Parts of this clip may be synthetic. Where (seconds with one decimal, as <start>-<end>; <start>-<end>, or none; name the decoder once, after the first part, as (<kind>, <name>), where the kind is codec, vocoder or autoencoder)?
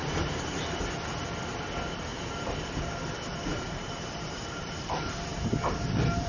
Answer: 0.0-0.8 (vocoder, BigVGAN v2); 2.1-2.9; 3.5-6.3